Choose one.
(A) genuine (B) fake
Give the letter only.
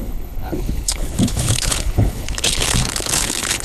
B